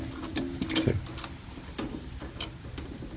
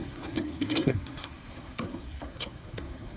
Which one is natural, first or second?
first